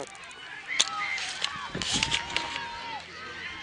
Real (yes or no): yes